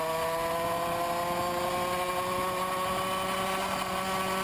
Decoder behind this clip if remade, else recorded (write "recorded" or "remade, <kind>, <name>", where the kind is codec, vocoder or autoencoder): recorded